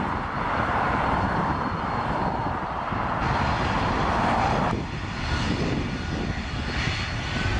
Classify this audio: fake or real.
real